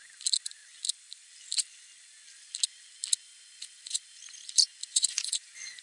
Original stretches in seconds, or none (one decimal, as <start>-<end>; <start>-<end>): 0.0-3.3; 4.0-4.8